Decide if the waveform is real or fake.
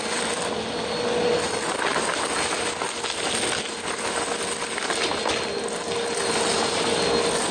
real